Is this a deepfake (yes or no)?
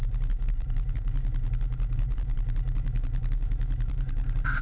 yes